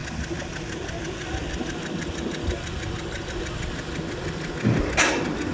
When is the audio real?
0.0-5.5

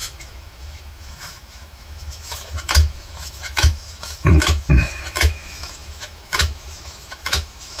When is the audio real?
none

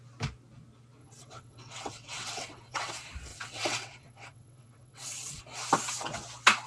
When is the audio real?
0.0-1.0; 2.9-3.3; 5.4-6.7

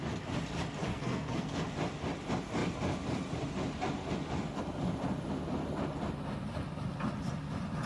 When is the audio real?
0.0-0.8; 1.6-7.9

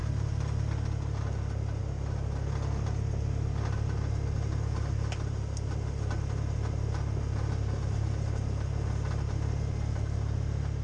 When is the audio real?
0.0-10.8

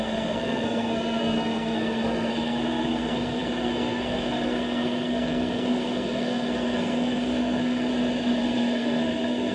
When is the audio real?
7.9-8.4

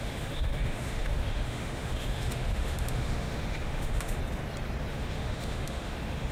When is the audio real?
4.2-4.9